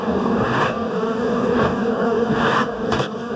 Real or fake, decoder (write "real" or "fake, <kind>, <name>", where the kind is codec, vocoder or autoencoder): fake, codec, DAC